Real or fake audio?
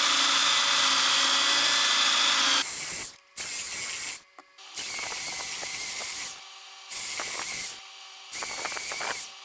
real